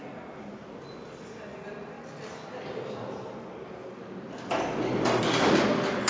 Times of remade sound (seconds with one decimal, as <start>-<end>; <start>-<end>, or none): none